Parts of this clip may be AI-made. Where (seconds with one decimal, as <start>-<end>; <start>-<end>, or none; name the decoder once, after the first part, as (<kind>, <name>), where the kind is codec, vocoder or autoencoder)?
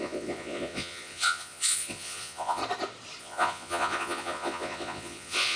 0.0-2.6 (vocoder, Vocos); 3.2-5.6